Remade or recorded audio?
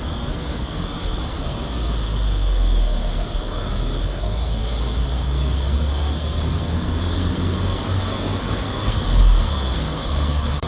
remade